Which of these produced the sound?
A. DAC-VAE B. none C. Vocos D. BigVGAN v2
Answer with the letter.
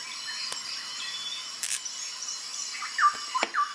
B